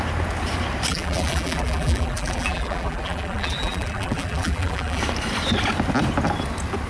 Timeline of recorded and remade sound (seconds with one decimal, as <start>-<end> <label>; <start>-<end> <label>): 0.0-0.9 recorded; 0.9-5.0 remade; 5.0-6.9 recorded